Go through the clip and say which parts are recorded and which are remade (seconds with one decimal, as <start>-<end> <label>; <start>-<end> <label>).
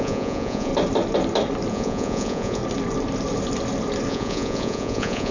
0.0-0.7 remade; 0.7-1.7 recorded; 1.7-2.6 remade; 2.6-4.1 recorded; 4.1-5.3 remade